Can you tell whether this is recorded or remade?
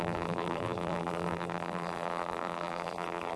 remade